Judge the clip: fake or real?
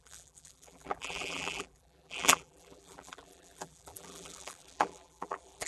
fake